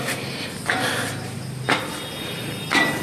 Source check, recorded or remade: recorded